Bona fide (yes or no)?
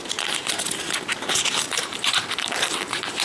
no